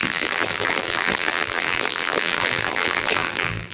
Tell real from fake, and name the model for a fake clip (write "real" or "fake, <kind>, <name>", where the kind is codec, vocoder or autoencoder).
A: fake, vocoder, BigVGAN v2